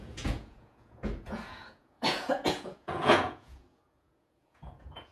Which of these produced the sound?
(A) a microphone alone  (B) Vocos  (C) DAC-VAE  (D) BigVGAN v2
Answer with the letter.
B